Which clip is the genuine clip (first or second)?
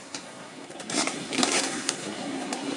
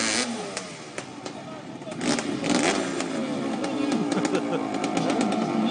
second